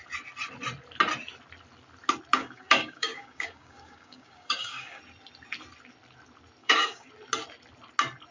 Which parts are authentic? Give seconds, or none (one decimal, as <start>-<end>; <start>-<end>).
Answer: 0.0-2.4; 5.0-6.6; 7.1-8.3